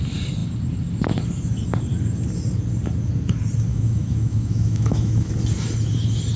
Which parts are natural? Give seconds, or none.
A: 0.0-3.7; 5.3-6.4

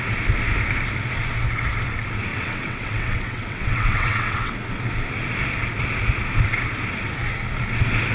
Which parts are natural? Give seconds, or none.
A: 0.0-2.3; 4.5-8.1

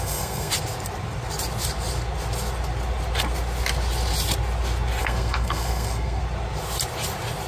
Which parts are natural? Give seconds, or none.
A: 0.5-5.0; 6.2-7.5